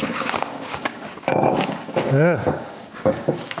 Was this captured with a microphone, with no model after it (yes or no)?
no